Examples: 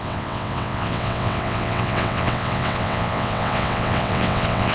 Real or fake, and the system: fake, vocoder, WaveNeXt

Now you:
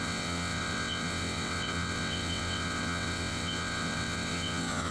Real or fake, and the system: fake, vocoder, WaveNeXt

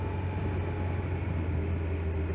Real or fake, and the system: real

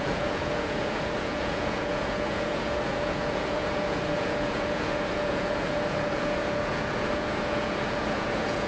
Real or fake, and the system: fake, vocoder, Vocos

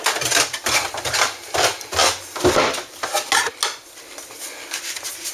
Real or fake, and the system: real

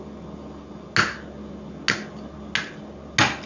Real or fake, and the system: real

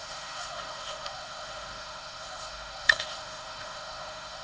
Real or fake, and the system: fake, autoencoder, DAC-VAE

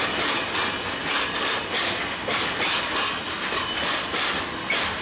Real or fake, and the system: real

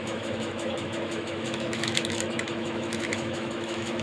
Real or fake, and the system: fake, autoencoder, DAC-VAE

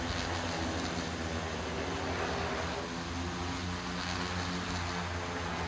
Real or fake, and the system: real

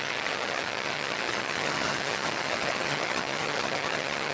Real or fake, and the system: fake, vocoder, HiFi-GAN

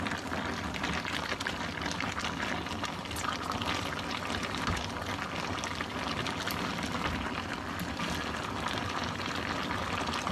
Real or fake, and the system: real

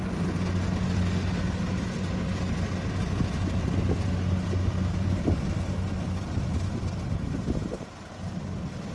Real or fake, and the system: real